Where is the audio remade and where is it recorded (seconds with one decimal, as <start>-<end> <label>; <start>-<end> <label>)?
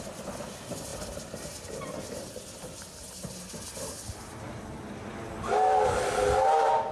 0.0-6.9 recorded